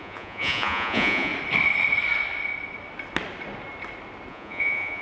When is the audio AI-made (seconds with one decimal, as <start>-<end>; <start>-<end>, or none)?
0.0-1.3; 4.3-5.0